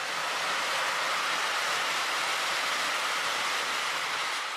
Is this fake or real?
real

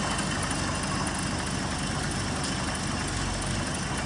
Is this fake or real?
real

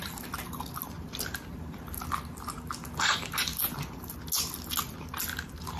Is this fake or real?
real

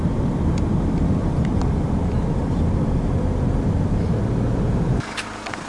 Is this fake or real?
real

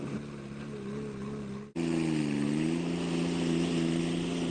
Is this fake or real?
real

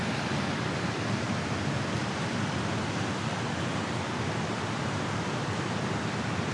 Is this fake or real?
real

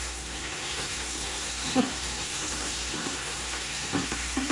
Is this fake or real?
fake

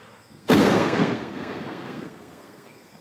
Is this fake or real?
fake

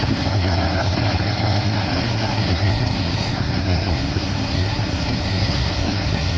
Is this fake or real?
fake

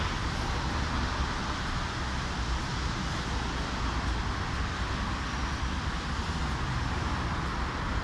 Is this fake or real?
real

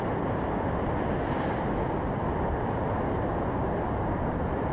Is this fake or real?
real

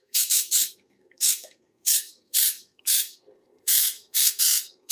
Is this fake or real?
fake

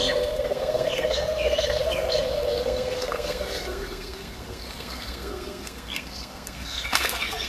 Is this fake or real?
fake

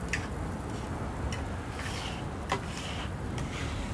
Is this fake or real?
real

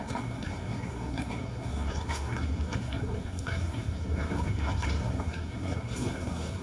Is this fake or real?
fake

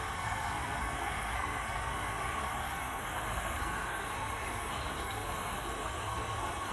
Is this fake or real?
fake